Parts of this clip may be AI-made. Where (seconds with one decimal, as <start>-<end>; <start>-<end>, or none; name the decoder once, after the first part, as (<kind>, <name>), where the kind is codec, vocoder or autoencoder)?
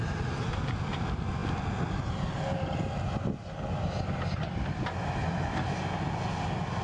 none